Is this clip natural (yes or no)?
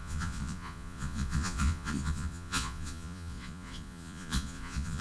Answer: no